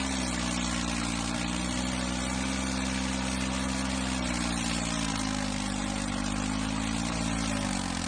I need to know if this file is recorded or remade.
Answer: recorded